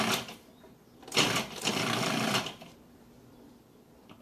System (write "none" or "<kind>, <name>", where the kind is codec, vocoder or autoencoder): vocoder, BigVGAN v2